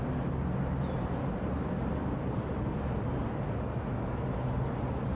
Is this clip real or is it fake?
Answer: real